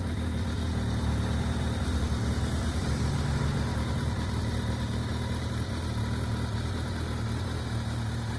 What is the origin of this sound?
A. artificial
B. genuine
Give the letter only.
B